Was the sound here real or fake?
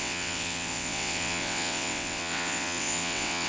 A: fake